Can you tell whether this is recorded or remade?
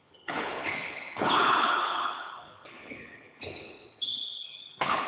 remade